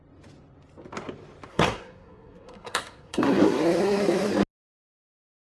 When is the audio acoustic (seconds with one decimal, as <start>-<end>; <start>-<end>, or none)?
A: 0.0-1.5; 4.3-5.4